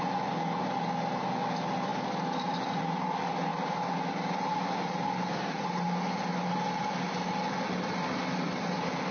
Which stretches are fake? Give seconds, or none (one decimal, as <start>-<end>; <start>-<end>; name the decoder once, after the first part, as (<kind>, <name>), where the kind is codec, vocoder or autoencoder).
3.5-4.1 (vocoder, BigVGAN v2)